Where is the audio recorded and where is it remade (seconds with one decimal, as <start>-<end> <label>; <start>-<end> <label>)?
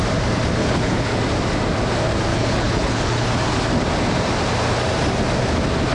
0.0-0.6 recorded; 0.6-1.2 remade; 1.2-2.3 recorded; 2.3-3.3 remade; 3.3-5.9 recorded